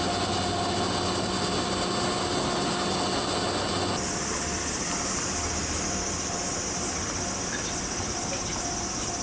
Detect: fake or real real